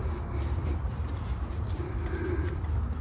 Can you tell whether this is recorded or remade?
recorded